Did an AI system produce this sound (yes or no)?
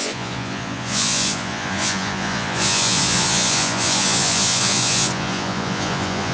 yes